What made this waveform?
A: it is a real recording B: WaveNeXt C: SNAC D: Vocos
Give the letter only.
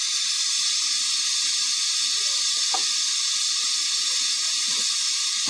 A